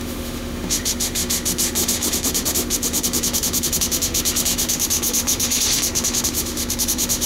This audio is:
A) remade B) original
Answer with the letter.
A